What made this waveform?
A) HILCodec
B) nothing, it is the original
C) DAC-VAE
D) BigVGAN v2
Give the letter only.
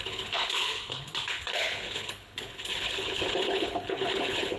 A